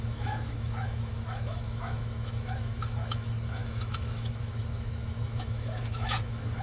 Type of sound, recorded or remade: remade